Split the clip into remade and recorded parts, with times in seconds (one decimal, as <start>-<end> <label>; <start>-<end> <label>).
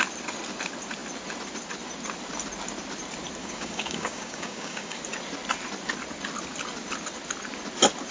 0.0-3.4 recorded; 3.4-5.0 remade; 5.0-8.1 recorded